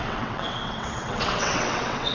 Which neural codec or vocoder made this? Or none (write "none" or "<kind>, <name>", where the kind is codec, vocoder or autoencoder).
vocoder, WaveNeXt